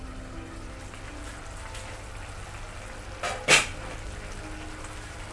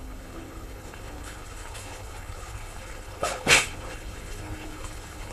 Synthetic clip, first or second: second